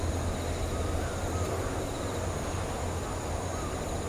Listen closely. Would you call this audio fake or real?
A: real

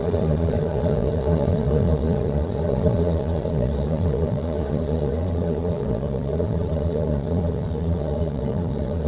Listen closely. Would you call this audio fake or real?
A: fake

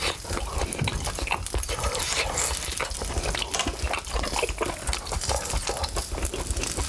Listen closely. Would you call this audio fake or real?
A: real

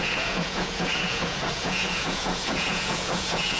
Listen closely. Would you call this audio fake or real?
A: fake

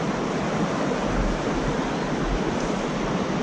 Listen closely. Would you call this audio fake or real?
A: real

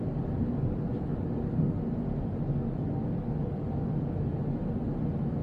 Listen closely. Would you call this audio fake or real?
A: real